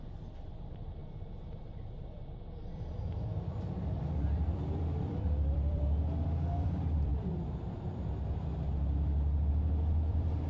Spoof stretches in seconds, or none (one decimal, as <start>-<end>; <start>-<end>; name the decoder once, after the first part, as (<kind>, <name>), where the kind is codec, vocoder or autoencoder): 0.0-7.1 (vocoder, BigVGAN v2); 9.5-10.5

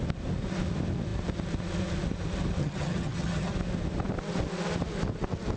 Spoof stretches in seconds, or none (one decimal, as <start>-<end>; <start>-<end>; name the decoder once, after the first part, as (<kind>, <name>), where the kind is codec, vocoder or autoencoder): 2.6-3.5 (vocoder, HiFi-GAN)

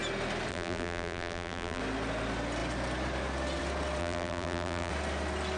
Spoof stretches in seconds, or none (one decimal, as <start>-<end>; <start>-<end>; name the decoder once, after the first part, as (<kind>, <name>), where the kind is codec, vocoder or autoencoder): 0.5-1.8 (vocoder, BigVGAN v2); 4.0-4.9

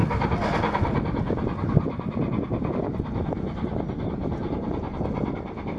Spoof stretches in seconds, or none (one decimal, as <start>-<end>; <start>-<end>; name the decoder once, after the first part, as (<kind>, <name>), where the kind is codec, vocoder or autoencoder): 4.2-4.7 (vocoder, BigVGAN v2)

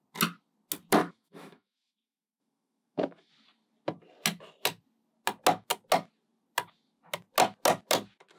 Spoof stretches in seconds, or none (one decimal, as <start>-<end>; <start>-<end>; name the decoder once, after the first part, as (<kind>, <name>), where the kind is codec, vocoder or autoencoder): 1.0-3.3 (autoencoder, DAC-VAE)

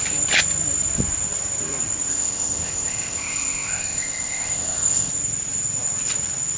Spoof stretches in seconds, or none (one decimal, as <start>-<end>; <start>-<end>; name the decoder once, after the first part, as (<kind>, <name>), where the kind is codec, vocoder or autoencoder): 2.1-5.1 (codec, ZipCodec)

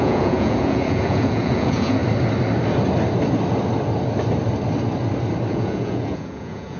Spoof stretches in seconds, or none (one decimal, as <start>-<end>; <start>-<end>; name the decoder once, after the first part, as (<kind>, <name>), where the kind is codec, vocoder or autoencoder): 0.0-2.0 (vocoder, Vocos); 5.5-6.8

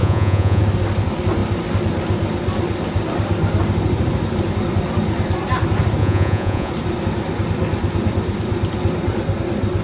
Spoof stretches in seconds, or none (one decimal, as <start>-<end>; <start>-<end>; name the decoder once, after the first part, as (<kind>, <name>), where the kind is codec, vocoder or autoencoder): 0.0-0.6 (vocoder, Vocos); 6.0-6.7